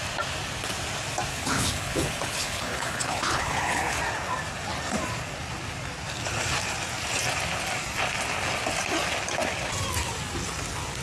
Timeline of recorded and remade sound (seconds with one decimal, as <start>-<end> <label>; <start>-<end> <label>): 0.0-1.3 recorded; 1.3-4.0 remade; 4.0-11.0 recorded